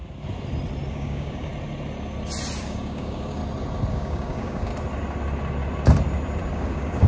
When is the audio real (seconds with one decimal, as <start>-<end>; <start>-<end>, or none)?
0.0-0.9; 1.5-2.6; 3.4-3.9; 4.7-6.5

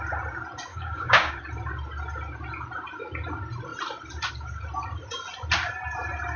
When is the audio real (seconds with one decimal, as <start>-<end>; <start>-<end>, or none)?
0.0-0.7; 1.4-6.4

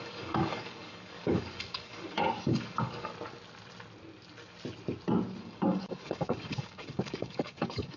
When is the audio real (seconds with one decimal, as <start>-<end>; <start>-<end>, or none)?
3.1-5.4

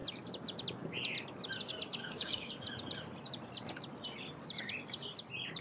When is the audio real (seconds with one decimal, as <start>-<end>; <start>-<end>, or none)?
0.0-2.0; 2.5-5.6

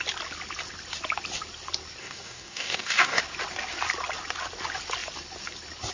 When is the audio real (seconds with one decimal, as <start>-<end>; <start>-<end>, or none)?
0.0-2.0; 3.2-5.9

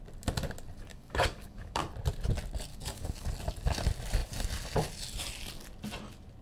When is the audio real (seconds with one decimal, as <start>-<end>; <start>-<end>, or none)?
0.0-0.9; 1.8-2.7; 3.3-6.4

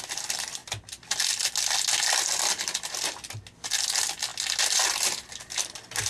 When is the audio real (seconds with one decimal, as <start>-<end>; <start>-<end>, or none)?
0.0-6.1

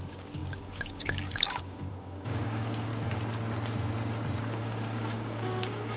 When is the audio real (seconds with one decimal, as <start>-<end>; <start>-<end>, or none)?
2.9-4.4